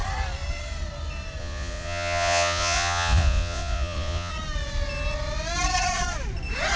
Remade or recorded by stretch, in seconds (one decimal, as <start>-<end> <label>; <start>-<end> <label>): 0.0-1.4 recorded; 1.4-4.3 remade; 4.3-6.8 recorded